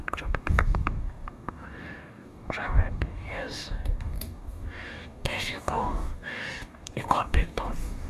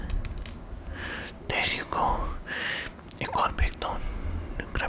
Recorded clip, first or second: second